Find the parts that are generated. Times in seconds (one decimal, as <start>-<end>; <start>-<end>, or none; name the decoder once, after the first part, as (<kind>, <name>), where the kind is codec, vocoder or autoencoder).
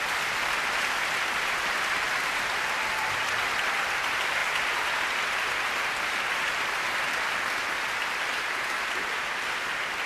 none